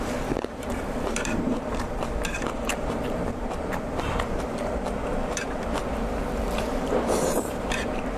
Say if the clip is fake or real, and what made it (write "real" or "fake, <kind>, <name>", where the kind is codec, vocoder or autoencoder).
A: fake, vocoder, BigVGAN v2